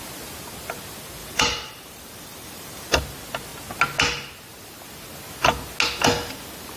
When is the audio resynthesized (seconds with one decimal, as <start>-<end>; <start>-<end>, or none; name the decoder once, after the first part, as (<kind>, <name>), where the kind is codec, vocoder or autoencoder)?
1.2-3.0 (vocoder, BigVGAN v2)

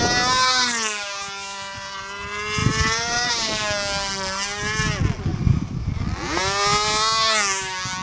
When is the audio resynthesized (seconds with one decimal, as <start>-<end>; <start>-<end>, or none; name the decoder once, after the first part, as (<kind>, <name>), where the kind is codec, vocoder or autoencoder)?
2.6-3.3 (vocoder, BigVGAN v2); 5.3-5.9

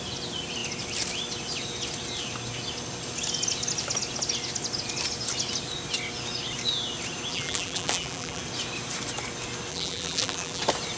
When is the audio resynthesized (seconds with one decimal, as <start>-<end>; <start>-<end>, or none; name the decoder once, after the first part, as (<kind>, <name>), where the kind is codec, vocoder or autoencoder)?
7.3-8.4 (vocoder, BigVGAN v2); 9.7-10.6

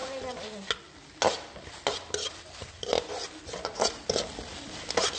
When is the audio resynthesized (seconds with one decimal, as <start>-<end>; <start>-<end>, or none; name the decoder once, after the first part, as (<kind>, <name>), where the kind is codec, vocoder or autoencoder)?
none

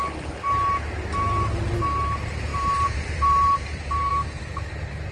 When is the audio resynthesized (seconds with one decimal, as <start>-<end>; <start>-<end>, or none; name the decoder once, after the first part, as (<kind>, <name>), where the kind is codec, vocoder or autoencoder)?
2.5-4.1 (vocoder, BigVGAN v2)

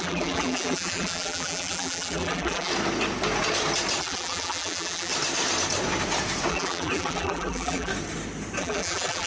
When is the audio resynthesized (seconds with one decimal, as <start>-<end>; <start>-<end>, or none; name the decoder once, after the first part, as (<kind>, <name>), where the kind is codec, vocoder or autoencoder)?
0.0-2.7 (vocoder, BigVGAN v2); 4.0-5.1; 6.5-7.9; 8.6-9.3

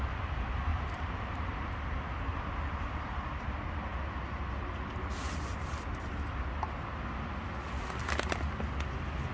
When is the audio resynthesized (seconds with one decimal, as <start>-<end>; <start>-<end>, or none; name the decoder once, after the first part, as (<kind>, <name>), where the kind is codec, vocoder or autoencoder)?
0.7-1.9 (vocoder, BigVGAN v2); 2.3-2.9